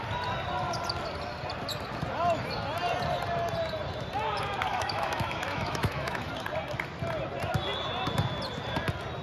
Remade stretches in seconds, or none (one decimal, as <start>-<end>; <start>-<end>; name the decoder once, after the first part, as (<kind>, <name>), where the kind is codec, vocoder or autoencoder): 4.7-6.3 (autoencoder, DAC-VAE)